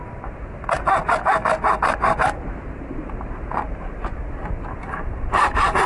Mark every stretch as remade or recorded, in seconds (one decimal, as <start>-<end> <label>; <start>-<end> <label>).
0.0-5.9 recorded

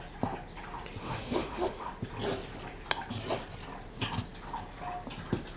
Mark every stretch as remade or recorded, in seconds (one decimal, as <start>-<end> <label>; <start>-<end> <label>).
0.0-1.0 recorded; 1.0-1.9 remade; 1.9-5.6 recorded